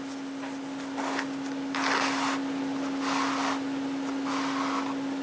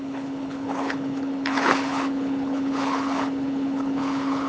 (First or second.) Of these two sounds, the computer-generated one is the second